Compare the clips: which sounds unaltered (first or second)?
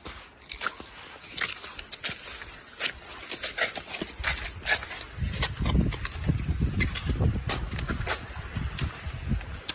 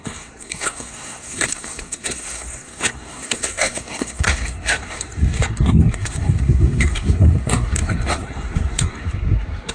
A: first